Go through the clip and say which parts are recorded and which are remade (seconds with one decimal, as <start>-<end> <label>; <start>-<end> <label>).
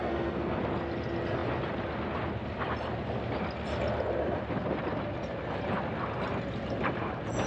0.0-0.6 remade; 0.6-7.5 recorded